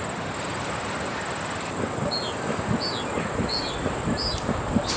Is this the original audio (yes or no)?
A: yes